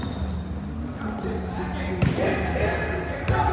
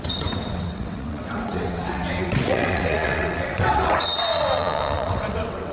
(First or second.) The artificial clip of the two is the second